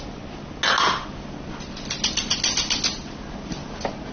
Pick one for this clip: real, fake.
real